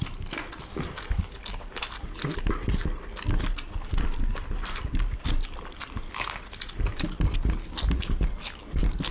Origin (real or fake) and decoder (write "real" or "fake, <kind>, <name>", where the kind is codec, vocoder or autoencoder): real